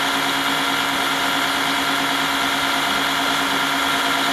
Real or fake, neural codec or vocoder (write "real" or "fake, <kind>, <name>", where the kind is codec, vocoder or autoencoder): real